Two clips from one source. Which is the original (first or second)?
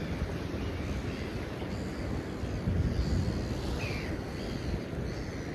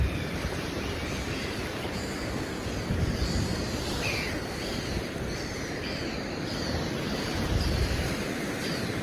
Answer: first